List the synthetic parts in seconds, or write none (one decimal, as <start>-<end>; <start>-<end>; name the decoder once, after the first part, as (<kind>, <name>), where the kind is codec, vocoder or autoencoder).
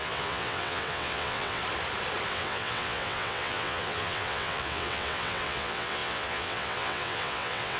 0.0-1.6 (vocoder, WaveNeXt); 2.3-7.8